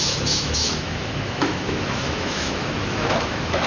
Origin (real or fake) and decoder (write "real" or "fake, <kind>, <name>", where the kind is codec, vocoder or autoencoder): fake, autoencoder, DAC-VAE